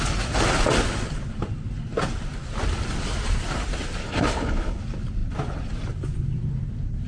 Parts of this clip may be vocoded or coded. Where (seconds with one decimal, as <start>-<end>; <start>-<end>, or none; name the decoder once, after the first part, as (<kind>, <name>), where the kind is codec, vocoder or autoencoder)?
4.0-4.8 (codec, HILCodec)